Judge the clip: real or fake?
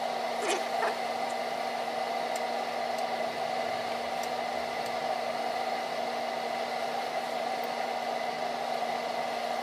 real